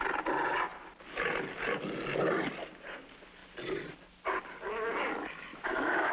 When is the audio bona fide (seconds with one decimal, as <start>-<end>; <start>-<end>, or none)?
0.0-5.5